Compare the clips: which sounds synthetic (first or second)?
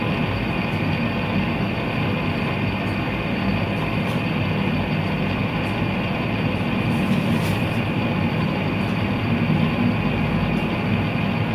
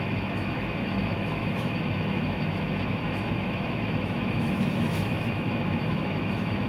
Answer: second